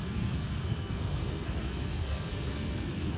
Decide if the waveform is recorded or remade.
remade